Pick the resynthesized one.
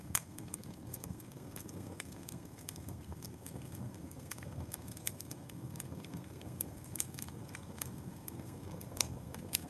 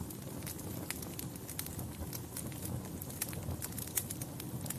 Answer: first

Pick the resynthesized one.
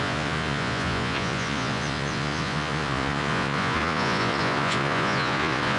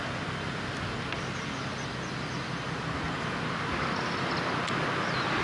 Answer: first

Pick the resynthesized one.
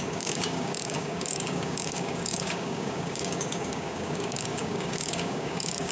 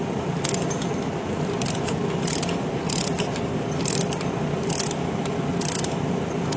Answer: first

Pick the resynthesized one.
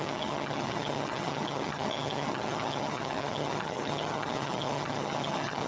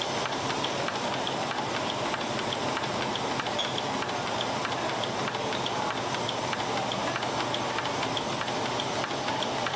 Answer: first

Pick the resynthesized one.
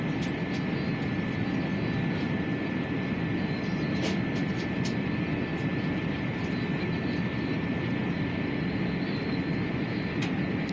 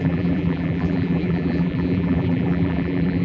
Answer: second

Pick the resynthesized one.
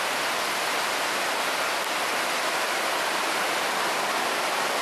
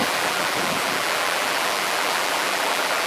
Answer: second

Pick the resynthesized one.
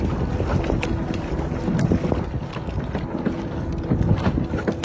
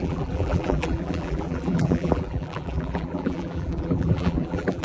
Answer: second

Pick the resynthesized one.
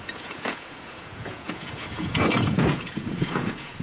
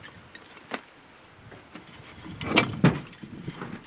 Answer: first